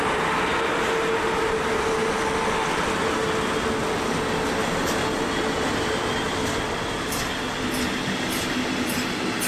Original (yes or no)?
yes